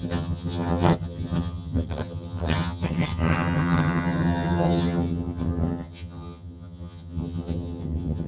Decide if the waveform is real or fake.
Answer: fake